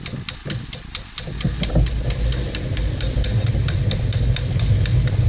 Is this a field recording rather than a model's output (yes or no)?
yes